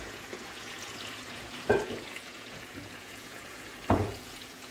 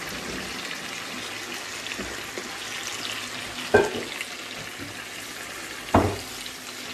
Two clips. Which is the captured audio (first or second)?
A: second